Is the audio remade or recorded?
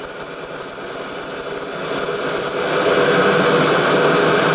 recorded